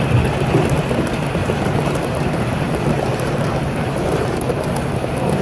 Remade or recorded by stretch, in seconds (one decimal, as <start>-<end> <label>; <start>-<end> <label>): 0.0-1.4 recorded; 1.4-4.6 remade; 4.6-5.4 recorded